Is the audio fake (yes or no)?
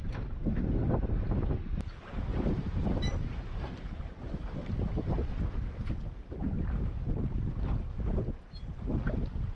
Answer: no